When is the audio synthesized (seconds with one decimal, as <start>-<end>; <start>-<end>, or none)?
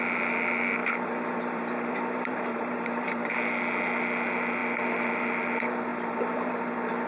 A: 0.8-3.3; 5.9-6.5